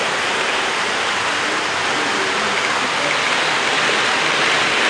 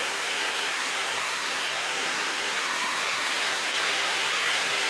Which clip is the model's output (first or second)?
second